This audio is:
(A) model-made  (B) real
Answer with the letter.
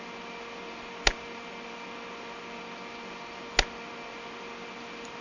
B